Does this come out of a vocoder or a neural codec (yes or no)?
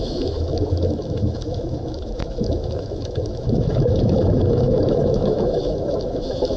yes